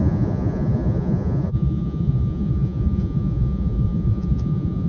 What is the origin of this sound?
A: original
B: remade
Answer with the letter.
B